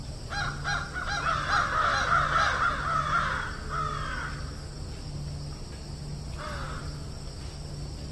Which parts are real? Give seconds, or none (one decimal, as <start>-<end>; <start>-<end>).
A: 0.0-8.1